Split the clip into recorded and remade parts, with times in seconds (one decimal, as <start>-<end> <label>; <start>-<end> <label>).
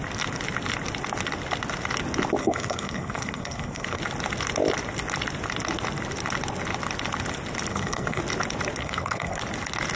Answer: 0.0-2.4 recorded; 2.4-4.0 remade; 4.0-7.7 recorded; 7.7-8.2 remade; 8.2-8.8 recorded; 8.8-9.4 remade; 9.4-10.0 recorded